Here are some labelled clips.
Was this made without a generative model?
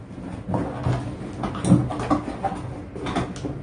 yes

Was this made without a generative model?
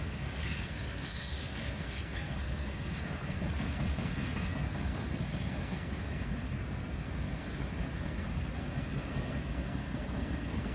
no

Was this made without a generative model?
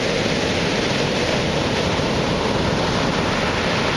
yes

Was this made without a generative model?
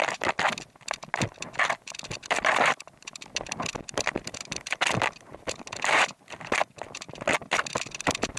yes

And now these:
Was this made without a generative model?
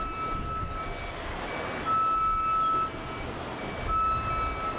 yes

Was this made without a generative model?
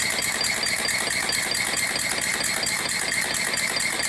yes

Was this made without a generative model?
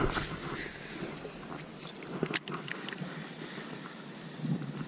yes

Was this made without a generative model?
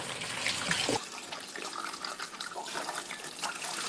yes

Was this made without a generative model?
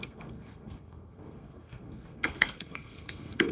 no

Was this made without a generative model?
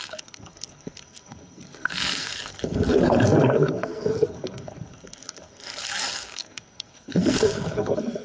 no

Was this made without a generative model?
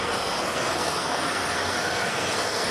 no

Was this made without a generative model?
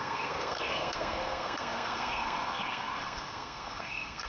no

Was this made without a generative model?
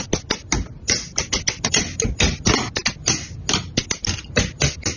yes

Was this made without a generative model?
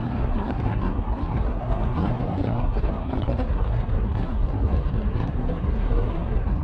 no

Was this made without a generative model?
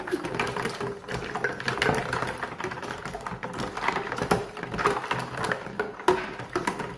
yes